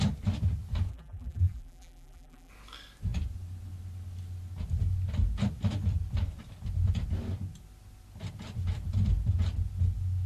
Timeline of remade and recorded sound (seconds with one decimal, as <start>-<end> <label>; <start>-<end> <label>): 0.0-0.9 recorded; 0.9-2.5 remade; 2.5-10.3 recorded